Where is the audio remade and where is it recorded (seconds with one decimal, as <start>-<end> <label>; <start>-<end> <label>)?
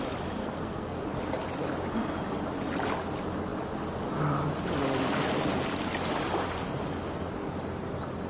0.0-0.4 recorded; 0.4-1.0 remade; 1.0-8.3 recorded